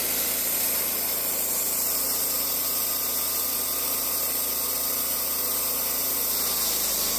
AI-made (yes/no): no